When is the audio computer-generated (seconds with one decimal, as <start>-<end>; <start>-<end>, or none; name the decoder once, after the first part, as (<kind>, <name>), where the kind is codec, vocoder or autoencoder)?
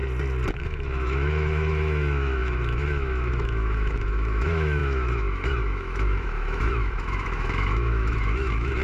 0.6-8.8 (autoencoder, DAC-VAE)